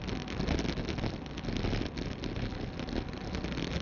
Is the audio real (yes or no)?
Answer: yes